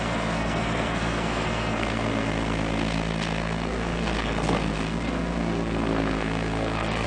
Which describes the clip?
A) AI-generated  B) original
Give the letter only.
A